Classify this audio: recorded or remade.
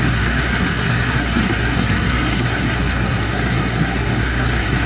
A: remade